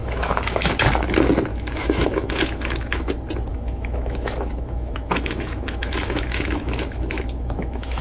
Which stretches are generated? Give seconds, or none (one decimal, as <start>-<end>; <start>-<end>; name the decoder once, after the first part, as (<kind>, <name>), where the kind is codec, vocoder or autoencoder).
0.0-0.7 (autoencoder, DAC-VAE); 1.5-3.1; 3.5-8.0